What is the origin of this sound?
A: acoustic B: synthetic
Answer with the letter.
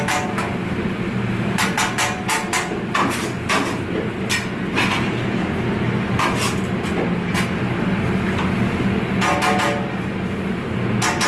A